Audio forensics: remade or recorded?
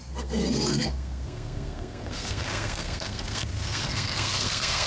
remade